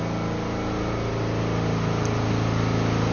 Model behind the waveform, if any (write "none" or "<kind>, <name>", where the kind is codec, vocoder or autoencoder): none